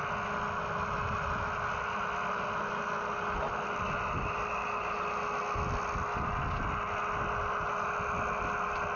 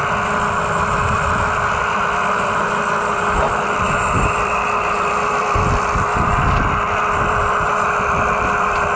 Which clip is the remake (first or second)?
second